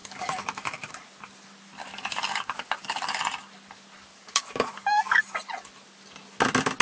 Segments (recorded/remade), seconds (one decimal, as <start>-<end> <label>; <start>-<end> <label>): 0.0-0.9 remade; 0.9-1.8 recorded; 1.8-3.2 remade; 3.2-4.1 recorded; 4.1-5.2 remade; 5.2-6.8 recorded